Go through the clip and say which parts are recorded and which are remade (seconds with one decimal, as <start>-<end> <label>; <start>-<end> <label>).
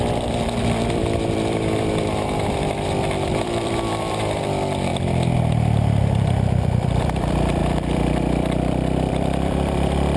0.0-4.9 remade; 4.9-6.0 recorded; 6.0-10.2 remade